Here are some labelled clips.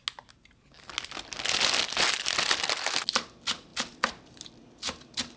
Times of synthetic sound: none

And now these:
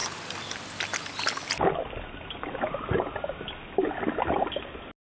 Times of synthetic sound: 0.0-0.8

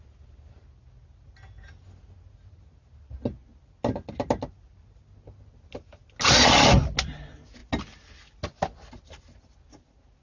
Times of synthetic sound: none

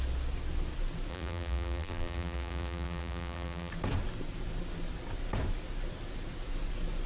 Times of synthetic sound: 1.1-3.7

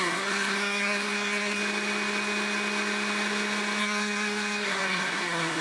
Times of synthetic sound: 0.0-1.6; 3.8-5.6

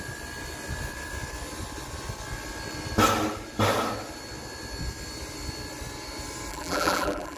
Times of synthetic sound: 6.5-7.4

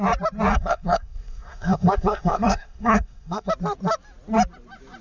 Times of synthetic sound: 0.5-3.5